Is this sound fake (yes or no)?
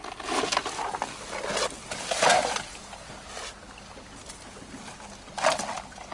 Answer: no